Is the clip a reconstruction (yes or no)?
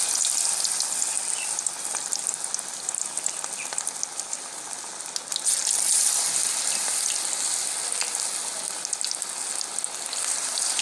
no